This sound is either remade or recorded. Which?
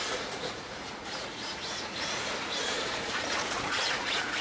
remade